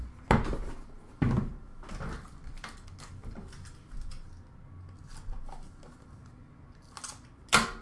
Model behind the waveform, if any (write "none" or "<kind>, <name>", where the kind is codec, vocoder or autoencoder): none